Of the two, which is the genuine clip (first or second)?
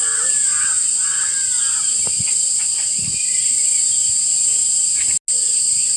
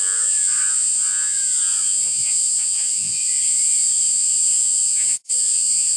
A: first